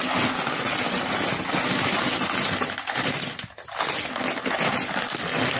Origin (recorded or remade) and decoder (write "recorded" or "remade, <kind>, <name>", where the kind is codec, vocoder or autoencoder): recorded